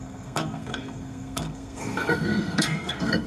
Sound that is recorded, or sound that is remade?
remade